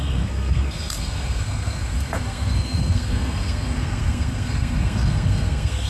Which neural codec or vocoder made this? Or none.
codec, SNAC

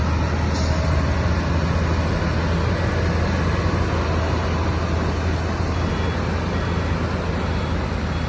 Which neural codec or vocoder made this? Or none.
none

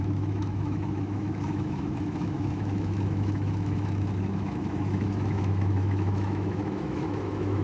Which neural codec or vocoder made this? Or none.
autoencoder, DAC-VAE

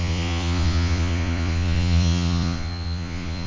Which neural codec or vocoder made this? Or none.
vocoder, Vocos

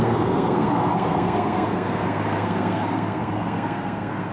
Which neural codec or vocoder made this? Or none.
codec, SNAC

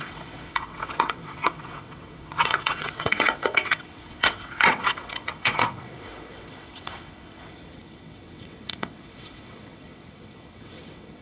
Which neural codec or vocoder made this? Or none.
vocoder, WaveNeXt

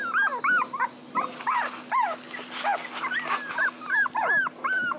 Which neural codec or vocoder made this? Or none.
none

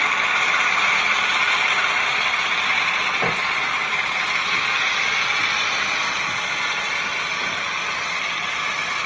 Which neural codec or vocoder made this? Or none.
none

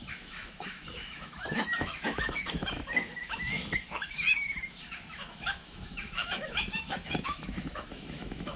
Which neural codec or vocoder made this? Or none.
autoencoder, DAC-VAE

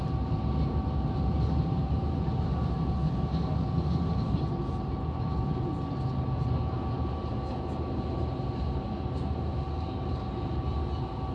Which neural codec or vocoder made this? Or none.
none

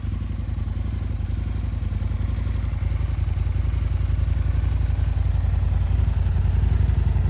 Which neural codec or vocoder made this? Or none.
none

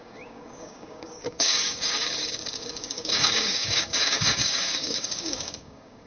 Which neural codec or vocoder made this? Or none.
codec, DAC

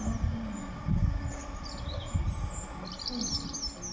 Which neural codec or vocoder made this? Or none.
none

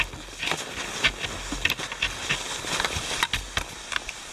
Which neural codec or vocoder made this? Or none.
none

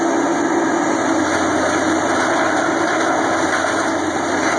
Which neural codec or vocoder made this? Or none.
none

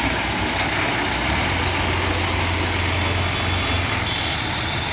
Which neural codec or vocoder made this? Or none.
none